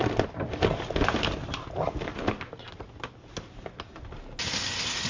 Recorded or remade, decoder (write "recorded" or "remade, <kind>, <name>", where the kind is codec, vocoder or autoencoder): recorded